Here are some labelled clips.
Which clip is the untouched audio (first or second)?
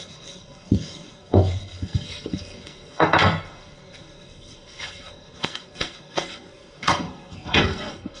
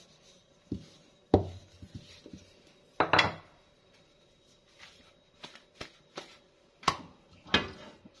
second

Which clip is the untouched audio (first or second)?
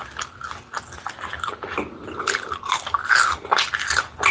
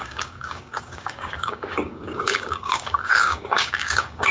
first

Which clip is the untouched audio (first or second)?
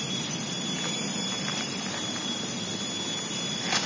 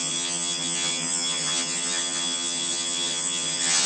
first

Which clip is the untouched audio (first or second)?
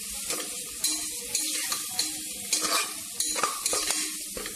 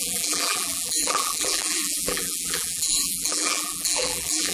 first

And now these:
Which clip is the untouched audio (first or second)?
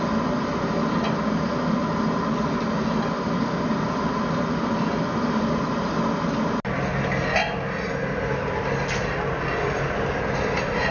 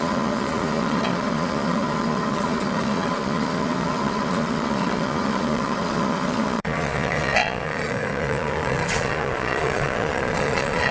first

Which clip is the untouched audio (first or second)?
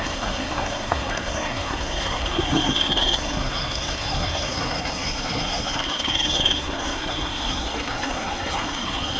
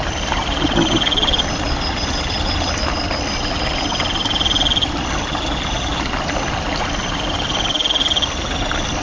second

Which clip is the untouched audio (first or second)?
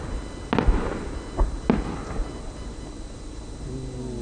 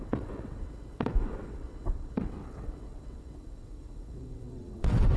first